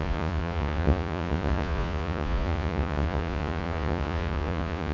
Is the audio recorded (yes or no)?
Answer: no